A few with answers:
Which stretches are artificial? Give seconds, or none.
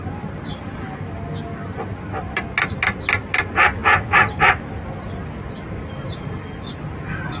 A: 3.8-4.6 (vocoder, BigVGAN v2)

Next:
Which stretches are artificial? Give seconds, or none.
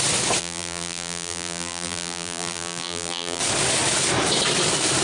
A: 0.4-3.4 (vocoder, BigVGAN v2)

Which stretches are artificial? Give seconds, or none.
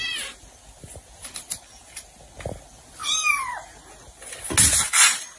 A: none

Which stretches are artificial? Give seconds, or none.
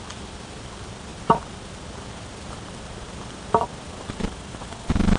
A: 1.1-4.2 (vocoder, BigVGAN v2)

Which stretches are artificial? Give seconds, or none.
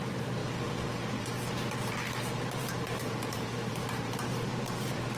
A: 0.0-0.4 (vocoder, BigVGAN v2); 1.1-5.2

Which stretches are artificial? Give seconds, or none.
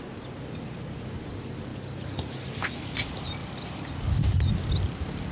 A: none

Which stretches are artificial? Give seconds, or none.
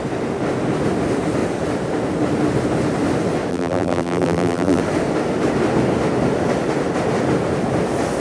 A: 3.5-4.8 (vocoder, BigVGAN v2)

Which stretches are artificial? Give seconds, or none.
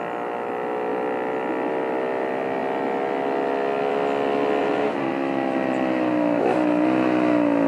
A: 4.6-5.1 (vocoder, BigVGAN v2)